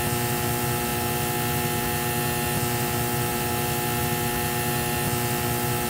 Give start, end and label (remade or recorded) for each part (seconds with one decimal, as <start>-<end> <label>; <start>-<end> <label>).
0.0-5.9 recorded